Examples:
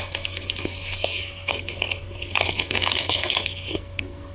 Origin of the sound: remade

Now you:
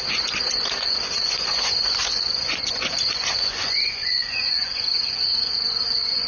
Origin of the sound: remade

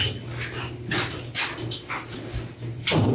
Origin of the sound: recorded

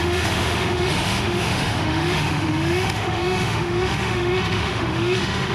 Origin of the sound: remade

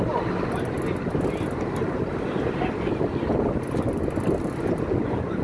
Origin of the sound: recorded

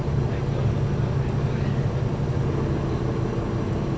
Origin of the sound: recorded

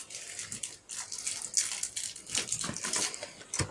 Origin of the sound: recorded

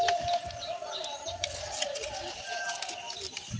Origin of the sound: recorded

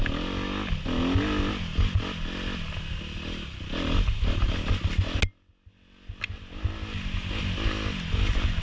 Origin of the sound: recorded